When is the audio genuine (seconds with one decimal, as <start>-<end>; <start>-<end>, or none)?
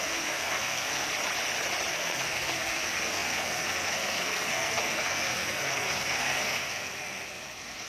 1.1-1.9